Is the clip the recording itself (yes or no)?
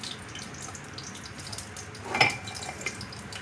yes